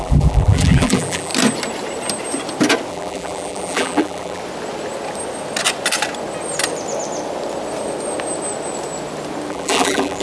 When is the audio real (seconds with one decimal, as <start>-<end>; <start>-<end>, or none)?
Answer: 1.3-2.9; 4.4-9.5